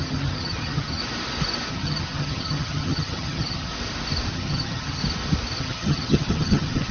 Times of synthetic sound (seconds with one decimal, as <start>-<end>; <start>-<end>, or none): 0.0-1.0; 1.7-3.7; 4.3-5.0; 5.6-6.9